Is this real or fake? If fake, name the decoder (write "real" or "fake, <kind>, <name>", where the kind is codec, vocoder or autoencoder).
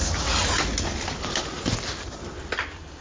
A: real